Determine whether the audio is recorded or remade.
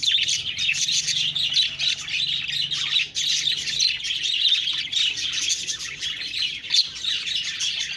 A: recorded